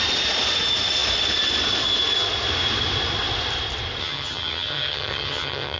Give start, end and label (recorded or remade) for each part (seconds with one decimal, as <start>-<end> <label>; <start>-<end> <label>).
0.0-4.0 recorded; 4.0-5.8 remade